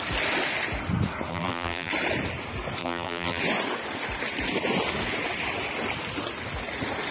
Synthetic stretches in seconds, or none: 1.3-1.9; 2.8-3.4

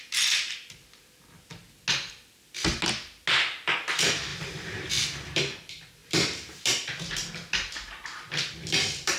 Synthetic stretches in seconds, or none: 4.3-4.9

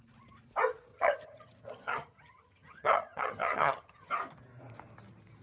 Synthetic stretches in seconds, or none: 0.9-4.1